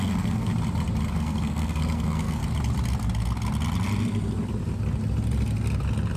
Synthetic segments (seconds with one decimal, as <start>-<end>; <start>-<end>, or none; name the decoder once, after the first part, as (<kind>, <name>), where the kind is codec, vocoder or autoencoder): 0.0-0.5 (codec, SNAC); 1.1-2.4